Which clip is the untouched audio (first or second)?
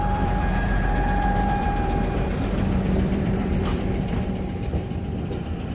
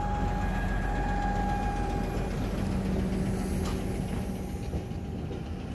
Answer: second